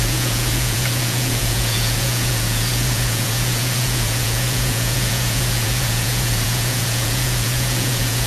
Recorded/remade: remade